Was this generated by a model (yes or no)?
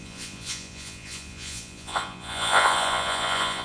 yes